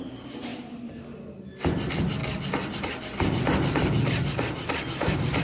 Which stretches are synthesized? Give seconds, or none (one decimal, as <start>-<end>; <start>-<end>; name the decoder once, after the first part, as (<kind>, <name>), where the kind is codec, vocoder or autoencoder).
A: 0.5-1.0 (vocoder, BigVGAN v2); 2.2-5.4